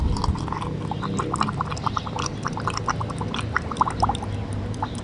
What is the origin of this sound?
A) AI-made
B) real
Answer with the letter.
B